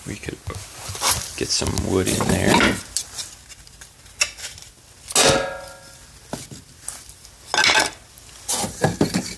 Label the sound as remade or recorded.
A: recorded